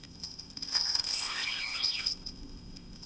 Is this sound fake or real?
fake